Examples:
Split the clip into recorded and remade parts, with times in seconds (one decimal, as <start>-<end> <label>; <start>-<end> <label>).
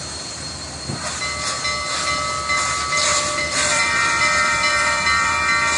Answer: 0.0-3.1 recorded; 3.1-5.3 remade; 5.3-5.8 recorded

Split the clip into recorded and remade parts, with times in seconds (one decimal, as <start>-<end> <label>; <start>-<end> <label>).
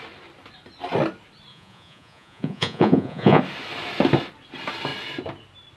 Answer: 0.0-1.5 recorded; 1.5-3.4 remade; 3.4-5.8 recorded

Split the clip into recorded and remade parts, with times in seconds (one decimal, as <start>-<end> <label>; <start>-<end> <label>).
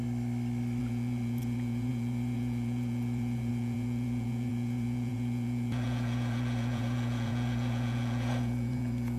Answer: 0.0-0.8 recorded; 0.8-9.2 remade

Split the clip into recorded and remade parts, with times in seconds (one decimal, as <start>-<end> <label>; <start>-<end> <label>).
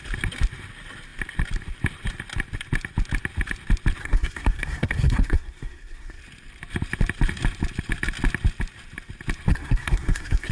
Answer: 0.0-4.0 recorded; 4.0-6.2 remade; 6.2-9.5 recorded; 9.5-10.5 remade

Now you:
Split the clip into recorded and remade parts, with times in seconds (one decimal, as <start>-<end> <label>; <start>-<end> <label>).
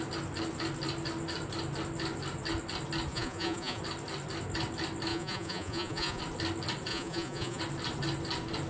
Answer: 0.0-3.1 recorded; 3.1-3.8 remade; 3.8-5.1 recorded; 5.1-6.2 remade; 6.2-6.9 recorded; 6.9-7.6 remade; 7.6-8.7 recorded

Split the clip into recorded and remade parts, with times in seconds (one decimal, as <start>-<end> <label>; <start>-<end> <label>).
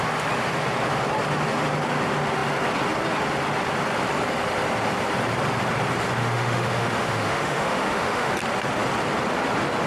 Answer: 0.0-6.2 recorded; 6.2-8.3 remade; 8.3-9.9 recorded